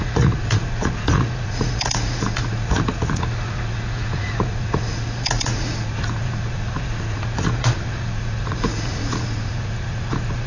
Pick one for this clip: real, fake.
fake